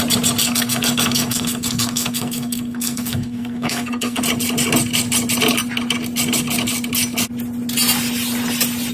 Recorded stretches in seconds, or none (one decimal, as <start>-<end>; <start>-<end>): 0.0-0.4; 4.2-8.9